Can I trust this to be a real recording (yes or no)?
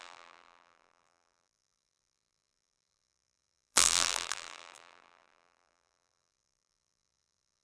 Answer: no